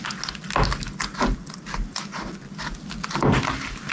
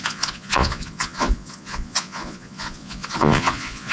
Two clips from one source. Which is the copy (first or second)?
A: second